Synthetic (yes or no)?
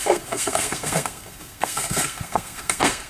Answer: yes